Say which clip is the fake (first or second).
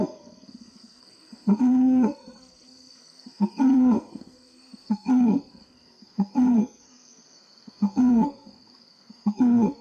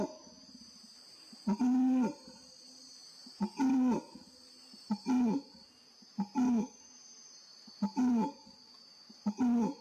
first